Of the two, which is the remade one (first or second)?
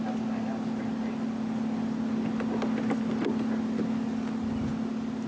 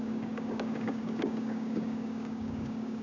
second